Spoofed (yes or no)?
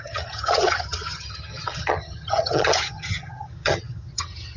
yes